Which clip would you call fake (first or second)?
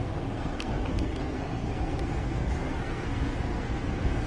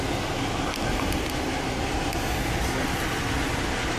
first